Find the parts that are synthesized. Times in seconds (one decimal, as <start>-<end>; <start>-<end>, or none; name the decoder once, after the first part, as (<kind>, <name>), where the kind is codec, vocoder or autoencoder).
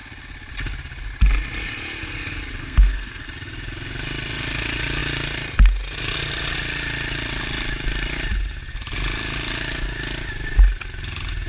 2.6-3.2 (codec, SNAC)